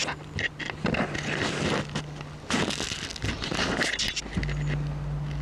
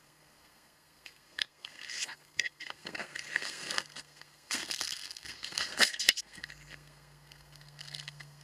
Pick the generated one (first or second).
second